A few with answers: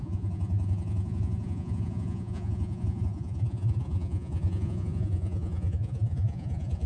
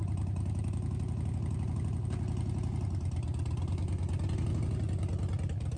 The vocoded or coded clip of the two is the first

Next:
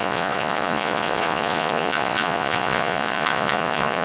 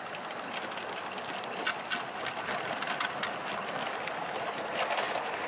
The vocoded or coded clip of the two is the first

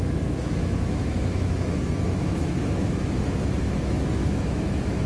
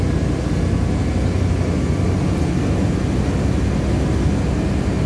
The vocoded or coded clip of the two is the first